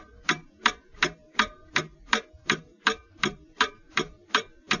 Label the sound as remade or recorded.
remade